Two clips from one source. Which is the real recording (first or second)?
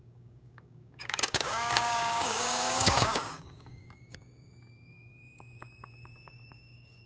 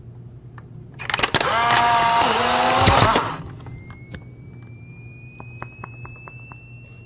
second